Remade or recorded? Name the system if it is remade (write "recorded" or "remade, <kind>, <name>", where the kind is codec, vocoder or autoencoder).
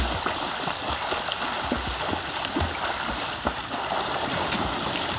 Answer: recorded